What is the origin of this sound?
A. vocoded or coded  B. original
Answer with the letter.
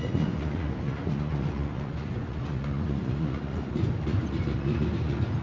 A